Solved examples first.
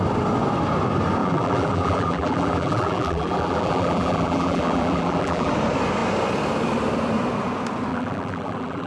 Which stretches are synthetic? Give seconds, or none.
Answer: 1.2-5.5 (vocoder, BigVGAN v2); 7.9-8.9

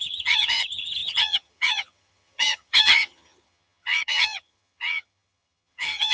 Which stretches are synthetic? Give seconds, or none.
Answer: 0.0-6.1 (vocoder, HiFi-GAN)

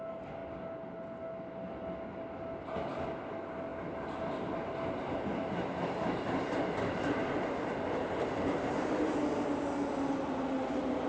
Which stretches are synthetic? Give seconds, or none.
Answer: none

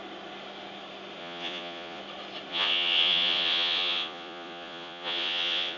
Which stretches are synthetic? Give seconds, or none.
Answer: 1.2-2.0 (vocoder, Vocos); 2.5-5.8

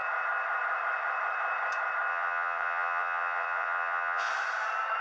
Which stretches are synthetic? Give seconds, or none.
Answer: 2.1-4.3 (vocoder, Vocos)

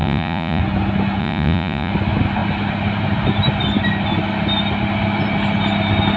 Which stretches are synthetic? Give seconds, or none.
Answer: 0.0-0.6 (vocoder, Vocos); 1.2-1.9

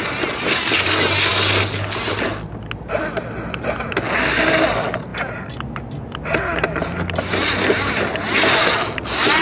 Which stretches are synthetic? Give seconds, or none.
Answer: none